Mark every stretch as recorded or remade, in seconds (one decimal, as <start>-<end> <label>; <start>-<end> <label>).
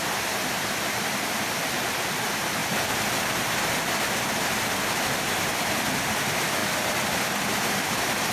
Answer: 0.0-6.6 recorded; 6.6-8.3 remade